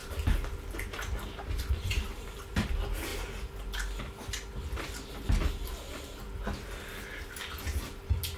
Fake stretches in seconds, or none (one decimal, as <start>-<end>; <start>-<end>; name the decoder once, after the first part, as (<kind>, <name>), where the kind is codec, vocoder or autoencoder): none

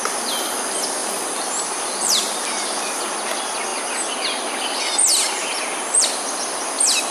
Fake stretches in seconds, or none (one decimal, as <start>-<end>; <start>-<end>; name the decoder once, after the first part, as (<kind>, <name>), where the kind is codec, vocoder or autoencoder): 1.0-3.0 (vocoder, BigVGAN v2)

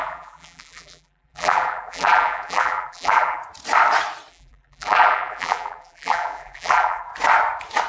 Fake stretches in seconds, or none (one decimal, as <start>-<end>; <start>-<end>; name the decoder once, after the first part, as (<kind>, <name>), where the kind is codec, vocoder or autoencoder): 0.0-3.4 (vocoder, BigVGAN v2); 4.3-7.1

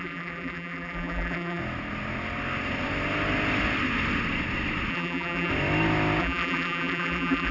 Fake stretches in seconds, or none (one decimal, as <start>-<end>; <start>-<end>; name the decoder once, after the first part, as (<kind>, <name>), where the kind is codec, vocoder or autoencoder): 0.0-1.6 (vocoder, BigVGAN v2); 4.9-5.5; 6.2-7.5

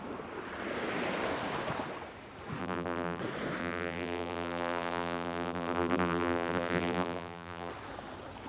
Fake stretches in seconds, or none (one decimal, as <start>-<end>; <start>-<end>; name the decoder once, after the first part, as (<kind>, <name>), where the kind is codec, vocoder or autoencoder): 2.6-3.2 (vocoder, BigVGAN v2); 3.6-7.7

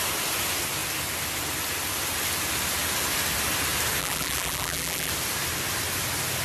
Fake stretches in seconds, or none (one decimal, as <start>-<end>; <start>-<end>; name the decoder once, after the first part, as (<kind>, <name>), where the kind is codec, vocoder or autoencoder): 4.0-5.1 (vocoder, BigVGAN v2)